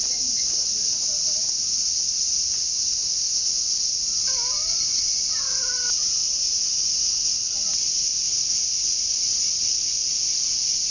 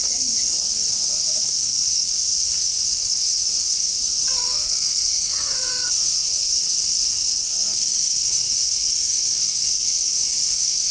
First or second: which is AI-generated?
second